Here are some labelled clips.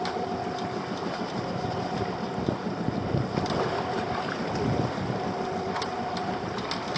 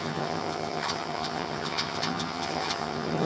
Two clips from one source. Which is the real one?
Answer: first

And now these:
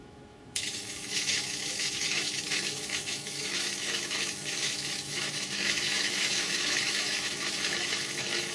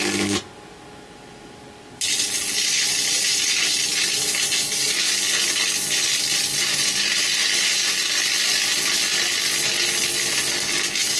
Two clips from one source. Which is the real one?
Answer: second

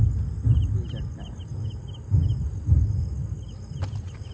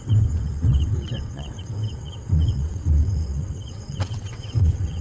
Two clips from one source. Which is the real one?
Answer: first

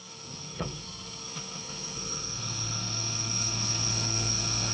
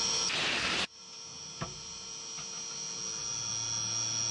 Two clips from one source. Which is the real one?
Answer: second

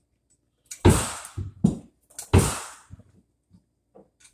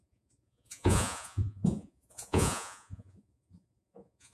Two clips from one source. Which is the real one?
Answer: first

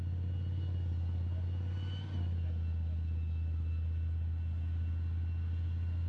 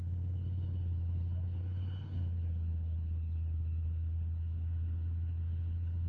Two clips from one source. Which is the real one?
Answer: first